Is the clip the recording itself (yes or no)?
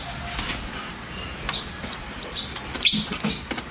yes